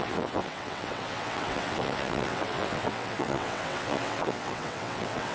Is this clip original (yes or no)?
no